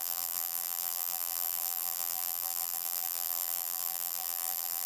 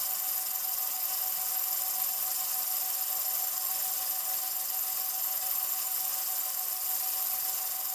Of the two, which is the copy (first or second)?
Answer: first